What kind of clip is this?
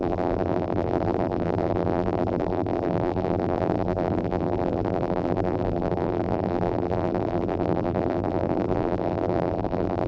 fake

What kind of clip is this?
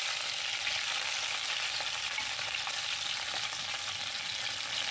real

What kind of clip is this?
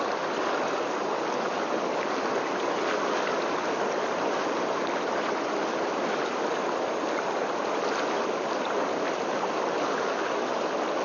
real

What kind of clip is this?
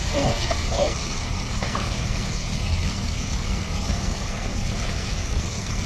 fake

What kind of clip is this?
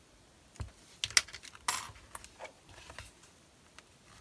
real